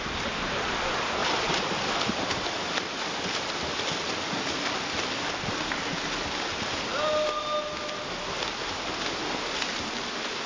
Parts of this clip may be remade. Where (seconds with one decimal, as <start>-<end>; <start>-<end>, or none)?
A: none

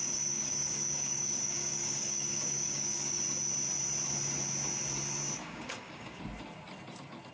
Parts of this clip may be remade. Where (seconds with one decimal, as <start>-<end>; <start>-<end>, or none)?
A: 0.0-3.2; 5.4-6.2

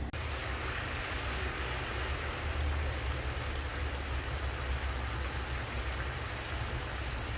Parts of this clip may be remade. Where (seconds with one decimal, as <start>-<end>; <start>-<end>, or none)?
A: 0.4-1.8

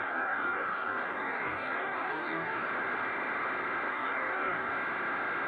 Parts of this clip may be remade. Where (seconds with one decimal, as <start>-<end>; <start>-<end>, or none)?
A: 0.0-2.7; 3.9-4.7

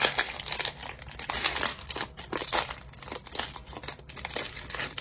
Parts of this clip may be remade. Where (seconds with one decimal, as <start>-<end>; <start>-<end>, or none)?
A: none

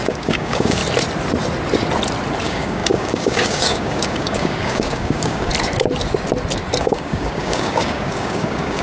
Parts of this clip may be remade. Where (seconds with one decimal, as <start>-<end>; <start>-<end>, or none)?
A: 0.0-0.8; 2.4-5.5; 6.8-8.8